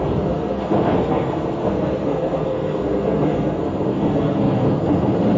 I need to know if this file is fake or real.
fake